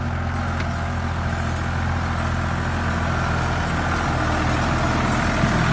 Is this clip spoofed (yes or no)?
no